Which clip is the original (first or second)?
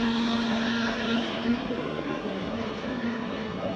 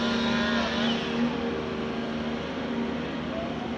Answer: second